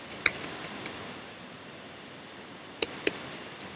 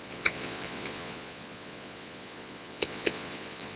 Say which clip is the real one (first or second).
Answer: first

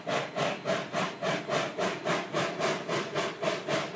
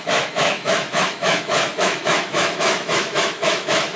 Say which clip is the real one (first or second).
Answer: first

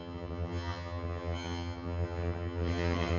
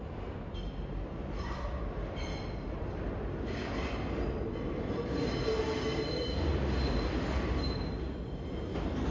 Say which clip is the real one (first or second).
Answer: second